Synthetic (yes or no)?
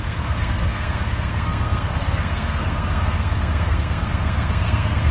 yes